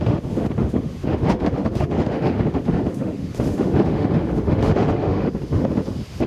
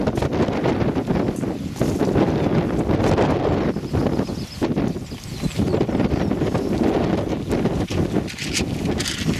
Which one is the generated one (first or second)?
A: first